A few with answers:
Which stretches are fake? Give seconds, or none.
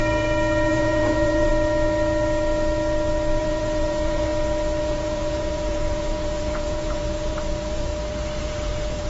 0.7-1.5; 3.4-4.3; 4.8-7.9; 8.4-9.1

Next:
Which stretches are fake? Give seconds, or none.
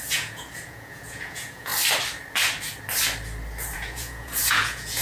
0.0-1.7; 3.7-5.0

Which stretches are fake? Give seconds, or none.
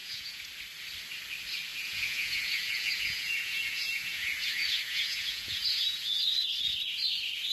0.0-0.5; 1.7-6.2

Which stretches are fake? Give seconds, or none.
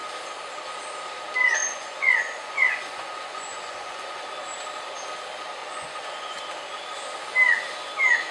1.6-4.2; 5.6-6.4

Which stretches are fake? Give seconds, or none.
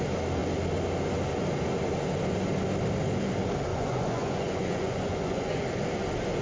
3.7-5.6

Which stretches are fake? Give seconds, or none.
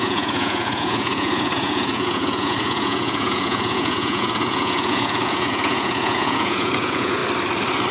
0.0-7.2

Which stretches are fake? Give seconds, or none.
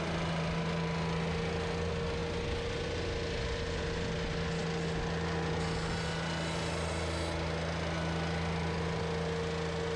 none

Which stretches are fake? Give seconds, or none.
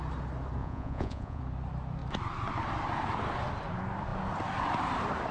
0.6-1.4